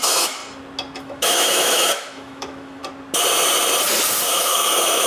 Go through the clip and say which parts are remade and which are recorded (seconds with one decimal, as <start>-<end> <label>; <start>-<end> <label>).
0.0-0.4 remade; 0.4-1.0 recorded; 1.0-2.8 remade; 2.8-4.3 recorded; 4.3-5.1 remade